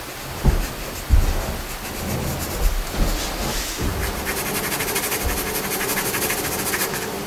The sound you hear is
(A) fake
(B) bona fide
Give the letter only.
B